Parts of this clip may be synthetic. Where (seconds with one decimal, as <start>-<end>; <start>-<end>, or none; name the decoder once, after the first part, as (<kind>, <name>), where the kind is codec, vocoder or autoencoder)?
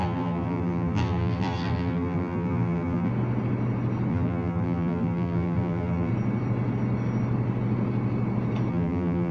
0.0-3.1 (vocoder, BigVGAN v2); 4.1-6.1; 8.7-9.3